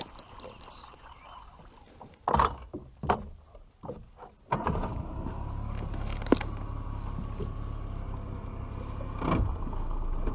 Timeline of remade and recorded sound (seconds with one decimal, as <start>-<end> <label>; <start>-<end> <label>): 0.0-0.8 recorded; 0.8-1.6 remade; 1.6-10.3 recorded